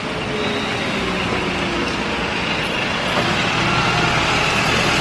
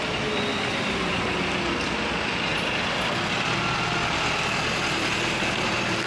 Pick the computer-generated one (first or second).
second